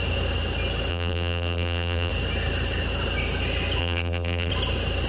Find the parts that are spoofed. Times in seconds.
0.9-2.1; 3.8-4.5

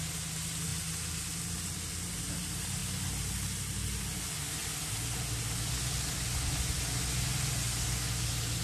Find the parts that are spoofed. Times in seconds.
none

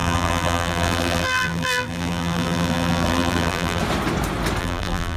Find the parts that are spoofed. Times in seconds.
0.0-3.8; 4.6-5.2

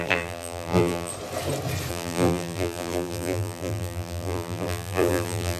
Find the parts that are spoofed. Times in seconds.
0.0-1.1; 1.9-5.6

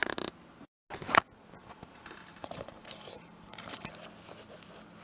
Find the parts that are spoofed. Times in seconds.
1.6-3.9

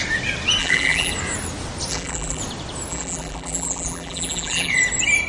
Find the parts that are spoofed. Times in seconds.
0.6-1.1; 1.9-2.4; 2.9-4.7

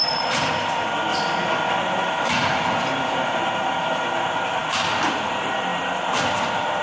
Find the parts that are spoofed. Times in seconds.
0.0-1.1; 2.3-6.8